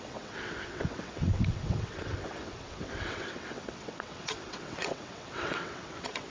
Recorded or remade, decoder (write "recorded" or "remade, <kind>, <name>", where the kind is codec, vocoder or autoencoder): remade, vocoder, WaveNeXt